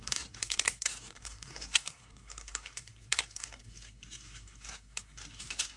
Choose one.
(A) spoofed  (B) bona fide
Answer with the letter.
A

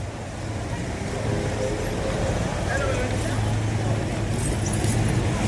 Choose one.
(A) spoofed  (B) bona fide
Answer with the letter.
B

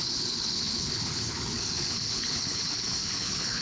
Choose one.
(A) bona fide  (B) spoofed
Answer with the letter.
B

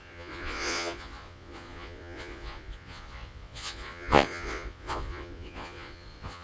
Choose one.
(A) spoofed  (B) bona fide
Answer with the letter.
A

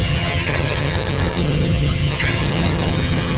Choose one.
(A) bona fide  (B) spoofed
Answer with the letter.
B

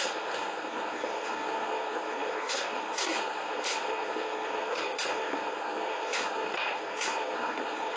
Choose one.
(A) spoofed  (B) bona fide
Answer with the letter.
A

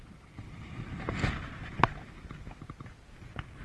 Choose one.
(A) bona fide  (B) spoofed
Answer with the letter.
A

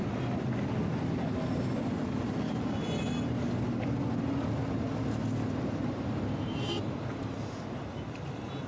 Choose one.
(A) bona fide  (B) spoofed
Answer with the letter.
A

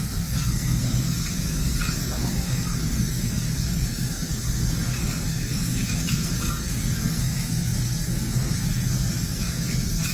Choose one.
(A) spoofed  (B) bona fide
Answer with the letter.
A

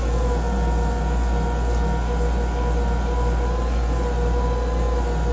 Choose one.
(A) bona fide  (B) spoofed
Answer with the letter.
A